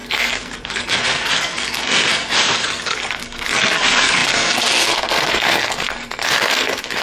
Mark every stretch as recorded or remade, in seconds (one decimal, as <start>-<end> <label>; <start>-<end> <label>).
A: 0.0-7.0 remade